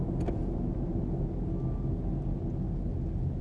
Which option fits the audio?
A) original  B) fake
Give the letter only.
A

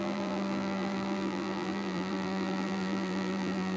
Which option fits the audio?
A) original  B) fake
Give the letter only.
B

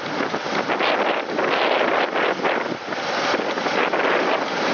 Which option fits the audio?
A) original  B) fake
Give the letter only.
A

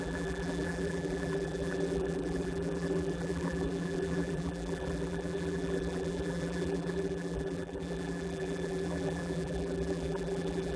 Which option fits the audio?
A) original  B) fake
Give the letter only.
B